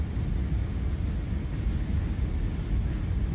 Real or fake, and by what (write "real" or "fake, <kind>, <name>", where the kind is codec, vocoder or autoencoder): real